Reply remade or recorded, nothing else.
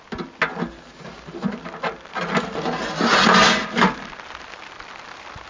recorded